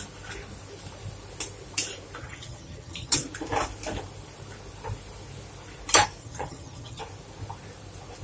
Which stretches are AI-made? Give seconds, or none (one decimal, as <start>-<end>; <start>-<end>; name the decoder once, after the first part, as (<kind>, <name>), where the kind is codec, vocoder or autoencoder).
2.2-3.2 (vocoder, HiFi-GAN); 6.2-7.0